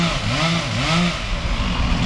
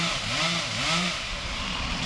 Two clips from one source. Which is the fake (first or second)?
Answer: second